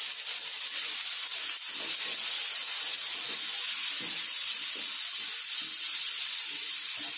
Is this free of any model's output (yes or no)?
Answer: yes